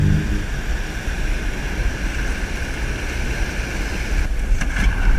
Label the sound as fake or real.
real